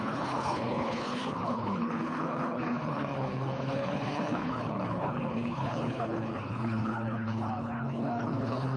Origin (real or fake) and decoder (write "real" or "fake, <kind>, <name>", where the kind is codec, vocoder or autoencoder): fake, codec, HILCodec